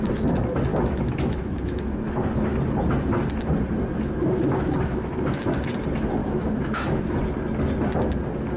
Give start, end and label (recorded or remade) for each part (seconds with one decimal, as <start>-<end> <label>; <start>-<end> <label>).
0.0-0.7 recorded; 0.7-2.1 remade; 2.1-4.2 recorded; 4.2-5.4 remade; 5.4-6.2 recorded; 6.2-7.2 remade; 7.2-8.6 recorded